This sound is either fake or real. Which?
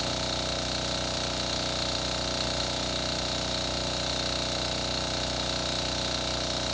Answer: real